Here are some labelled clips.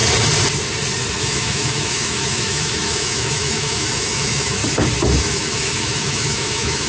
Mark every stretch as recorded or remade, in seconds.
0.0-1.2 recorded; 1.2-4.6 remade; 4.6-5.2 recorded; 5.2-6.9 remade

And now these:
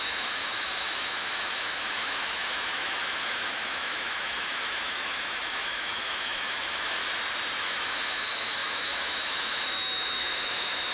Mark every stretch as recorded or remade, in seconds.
0.0-7.0 remade; 7.0-7.6 recorded; 7.6-10.9 remade